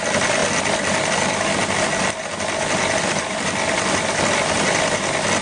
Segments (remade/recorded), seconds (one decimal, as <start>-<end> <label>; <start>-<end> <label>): 0.0-0.4 recorded; 0.4-1.0 remade; 1.0-1.6 recorded; 1.6-4.8 remade; 4.8-5.4 recorded